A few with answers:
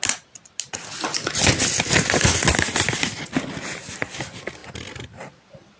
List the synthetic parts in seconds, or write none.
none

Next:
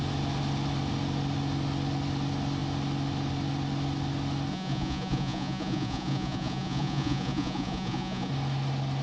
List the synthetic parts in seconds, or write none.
4.5-8.3 (vocoder, Vocos)

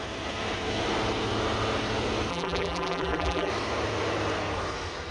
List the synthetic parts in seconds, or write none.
2.3-3.5 (vocoder, BigVGAN v2)